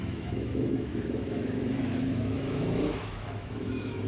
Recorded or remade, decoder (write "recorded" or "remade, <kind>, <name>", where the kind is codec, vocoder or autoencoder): remade, autoencoder, DAC-VAE